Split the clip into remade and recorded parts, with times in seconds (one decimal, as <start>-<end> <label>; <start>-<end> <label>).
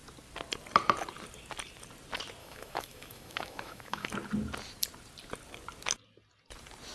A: 0.0-2.4 recorded; 2.4-4.1 remade; 4.1-6.9 recorded